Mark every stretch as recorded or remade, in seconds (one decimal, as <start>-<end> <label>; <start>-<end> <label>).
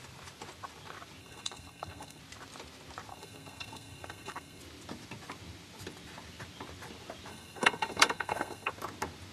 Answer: 0.0-1.2 recorded; 1.2-2.2 remade; 2.2-3.1 recorded; 3.1-4.6 remade; 4.6-7.3 recorded; 7.3-8.7 remade; 8.7-9.3 recorded